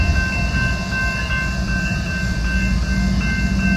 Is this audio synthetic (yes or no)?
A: no